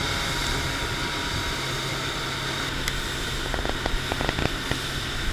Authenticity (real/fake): real